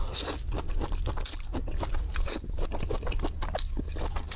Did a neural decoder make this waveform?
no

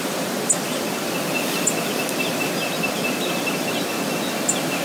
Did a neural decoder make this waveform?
no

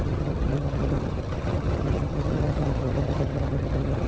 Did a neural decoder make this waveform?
yes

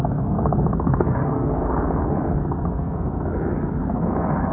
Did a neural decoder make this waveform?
yes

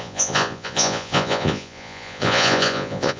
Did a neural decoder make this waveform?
yes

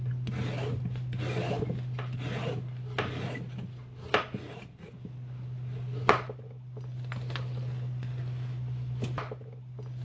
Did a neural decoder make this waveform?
no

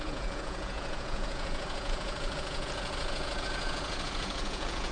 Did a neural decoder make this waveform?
yes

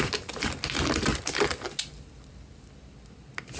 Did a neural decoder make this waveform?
no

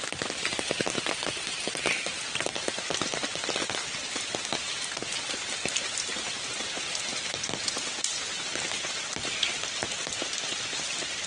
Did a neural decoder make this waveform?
no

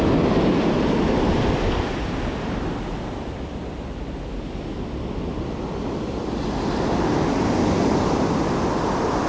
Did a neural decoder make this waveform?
no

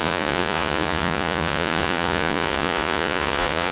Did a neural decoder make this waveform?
yes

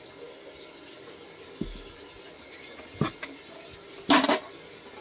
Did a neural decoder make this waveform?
no